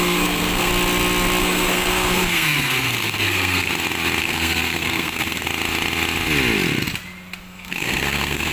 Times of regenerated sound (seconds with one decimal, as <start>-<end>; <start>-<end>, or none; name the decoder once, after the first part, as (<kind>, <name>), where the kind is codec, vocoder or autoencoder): 0.0-0.7 (codec, SNAC); 1.4-3.7; 4.2-5.5; 7.4-8.5